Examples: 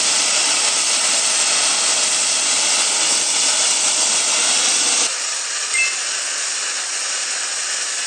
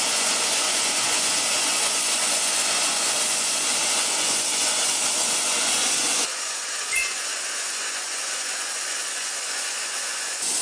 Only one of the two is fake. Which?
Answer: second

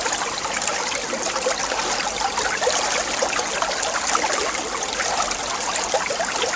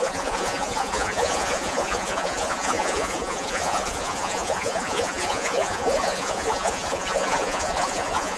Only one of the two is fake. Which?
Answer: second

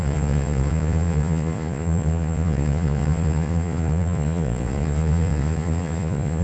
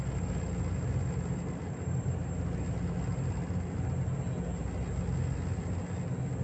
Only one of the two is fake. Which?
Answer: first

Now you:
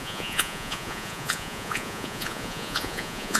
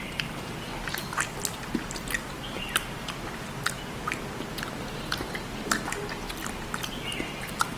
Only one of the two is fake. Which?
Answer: first